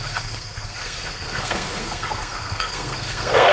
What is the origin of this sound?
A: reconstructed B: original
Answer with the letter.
A